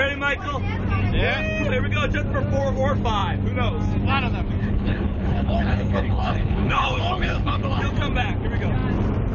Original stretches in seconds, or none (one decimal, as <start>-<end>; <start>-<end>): 0.0-4.6; 7.8-9.3